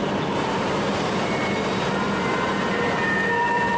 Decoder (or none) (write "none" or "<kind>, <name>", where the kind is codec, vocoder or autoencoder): vocoder, BigVGAN v2